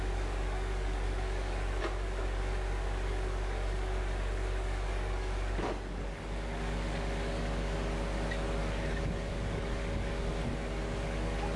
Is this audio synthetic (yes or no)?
yes